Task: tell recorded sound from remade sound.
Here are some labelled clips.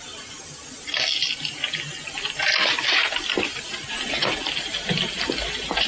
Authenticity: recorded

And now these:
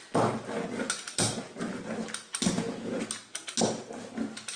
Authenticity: recorded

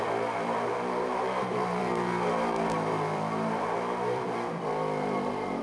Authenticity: remade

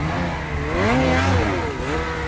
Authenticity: recorded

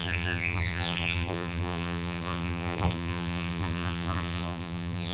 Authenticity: remade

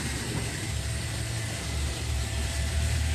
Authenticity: remade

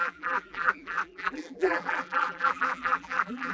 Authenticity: remade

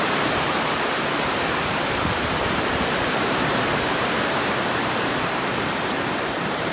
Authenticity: remade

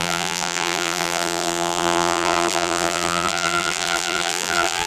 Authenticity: remade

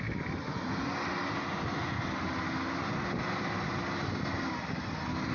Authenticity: recorded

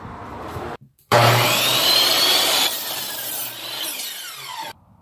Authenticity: remade